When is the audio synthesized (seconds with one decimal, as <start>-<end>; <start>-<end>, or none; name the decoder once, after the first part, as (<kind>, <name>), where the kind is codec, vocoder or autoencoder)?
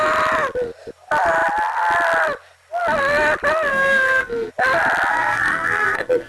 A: 3.7-4.5 (codec, SNAC); 5.1-6.3